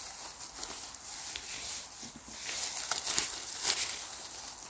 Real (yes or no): yes